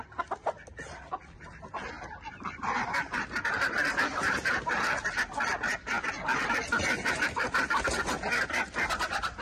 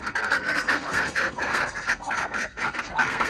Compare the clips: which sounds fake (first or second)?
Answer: second